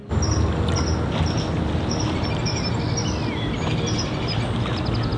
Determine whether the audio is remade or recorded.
recorded